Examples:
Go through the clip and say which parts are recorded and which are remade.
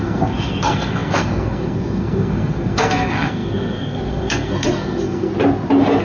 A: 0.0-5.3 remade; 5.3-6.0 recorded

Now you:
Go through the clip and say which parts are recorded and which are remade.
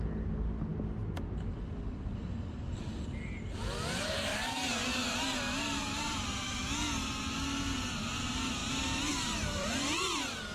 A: 0.0-4.3 recorded; 4.3-6.6 remade; 6.6-10.5 recorded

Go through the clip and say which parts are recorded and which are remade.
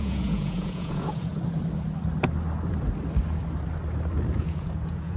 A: 0.0-1.3 remade; 1.3-4.4 recorded; 4.4-5.2 remade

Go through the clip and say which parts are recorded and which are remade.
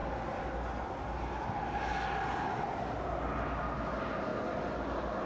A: 0.0-5.3 recorded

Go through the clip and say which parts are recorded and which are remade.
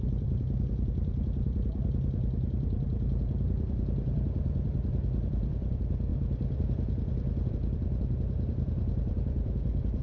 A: 0.0-10.0 remade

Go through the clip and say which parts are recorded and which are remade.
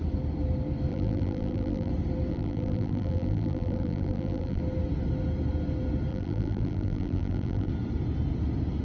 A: 0.0-0.9 recorded; 0.9-1.9 remade; 1.9-2.3 recorded; 2.3-4.6 remade; 4.6-6.1 recorded; 6.1-7.7 remade; 7.7-8.8 recorded